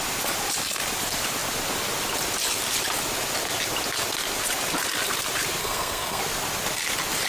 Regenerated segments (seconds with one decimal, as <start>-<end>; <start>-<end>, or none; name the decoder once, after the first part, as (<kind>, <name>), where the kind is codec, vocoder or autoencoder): 5.6-6.2 (codec, SNAC)